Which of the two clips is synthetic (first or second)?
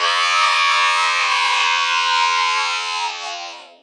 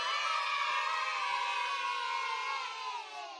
first